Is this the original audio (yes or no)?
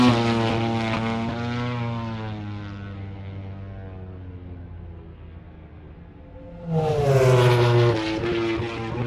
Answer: yes